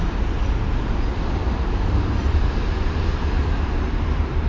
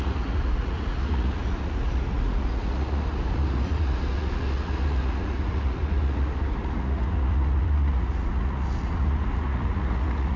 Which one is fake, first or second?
second